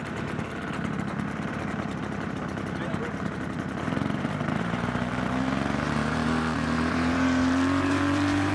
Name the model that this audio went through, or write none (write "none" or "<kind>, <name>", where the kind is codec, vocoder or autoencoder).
vocoder, BigVGAN v2